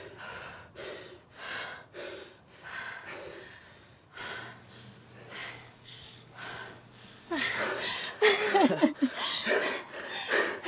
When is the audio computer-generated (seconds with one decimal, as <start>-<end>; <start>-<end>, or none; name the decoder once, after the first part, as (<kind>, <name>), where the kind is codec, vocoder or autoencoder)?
5.4-7.6 (codec, DAC)